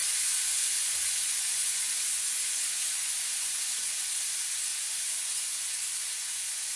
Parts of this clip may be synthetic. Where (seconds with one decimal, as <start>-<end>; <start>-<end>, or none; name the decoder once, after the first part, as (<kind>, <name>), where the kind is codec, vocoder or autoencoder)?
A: 0.0-4.0 (vocoder, Vocos); 4.7-6.8